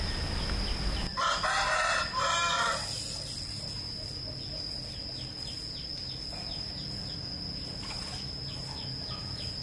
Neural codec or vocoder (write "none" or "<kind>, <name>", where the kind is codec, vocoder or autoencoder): none